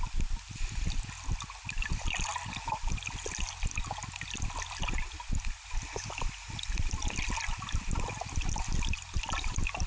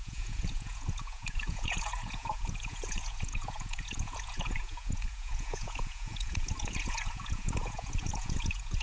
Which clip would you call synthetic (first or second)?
second